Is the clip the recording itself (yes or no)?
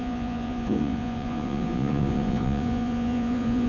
no